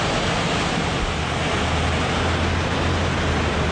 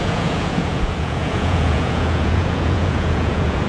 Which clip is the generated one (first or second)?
second